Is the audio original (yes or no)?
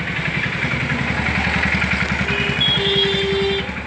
yes